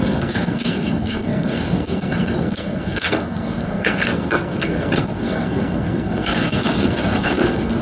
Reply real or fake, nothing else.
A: fake